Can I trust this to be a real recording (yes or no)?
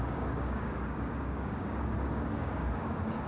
no